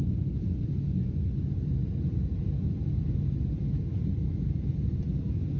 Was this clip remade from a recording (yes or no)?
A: no